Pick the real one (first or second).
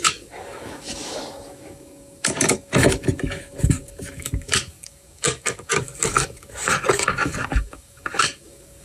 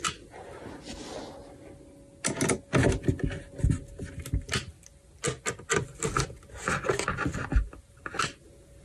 second